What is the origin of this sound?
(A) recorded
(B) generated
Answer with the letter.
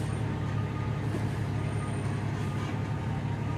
A